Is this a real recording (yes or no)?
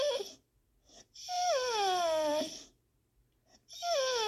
yes